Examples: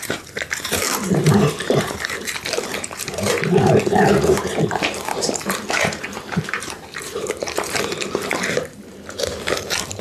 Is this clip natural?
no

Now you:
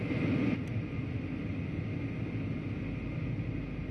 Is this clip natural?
yes